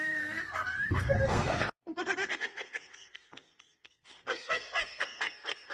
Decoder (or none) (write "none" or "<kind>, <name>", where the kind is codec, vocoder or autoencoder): codec, SNAC